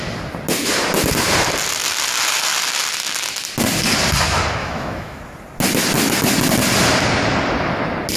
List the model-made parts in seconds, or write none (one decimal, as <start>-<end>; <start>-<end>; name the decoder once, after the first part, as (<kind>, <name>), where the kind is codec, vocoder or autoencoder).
4.6-5.2 (autoencoder, DAC-VAE)